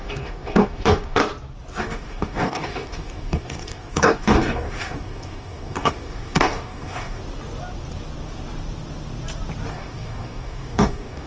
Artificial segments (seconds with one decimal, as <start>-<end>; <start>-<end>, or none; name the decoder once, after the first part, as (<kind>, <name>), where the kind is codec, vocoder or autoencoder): 0.0-1.2 (codec, DAC); 1.8-7.2; 9.7-11.3